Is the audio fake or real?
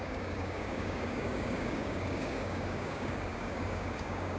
fake